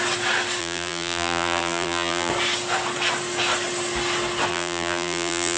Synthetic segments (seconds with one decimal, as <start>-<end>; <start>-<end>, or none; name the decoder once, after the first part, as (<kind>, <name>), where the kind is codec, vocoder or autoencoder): 0.6-2.3 (vocoder, BigVGAN v2); 4.5-5.6